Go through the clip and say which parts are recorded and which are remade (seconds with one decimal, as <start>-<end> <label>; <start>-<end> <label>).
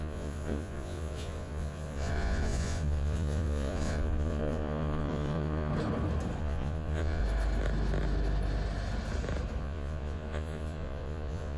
0.0-5.7 remade; 5.7-6.4 recorded; 6.4-7.2 remade; 7.2-9.6 recorded; 9.6-11.6 remade